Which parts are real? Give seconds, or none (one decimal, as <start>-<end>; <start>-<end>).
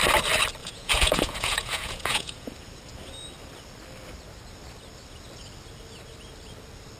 0.0-0.6; 2.5-7.0